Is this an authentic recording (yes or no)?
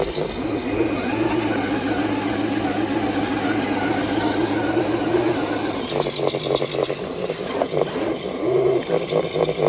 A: yes